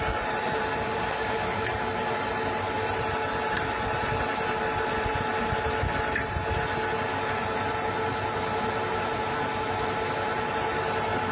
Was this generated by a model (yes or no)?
no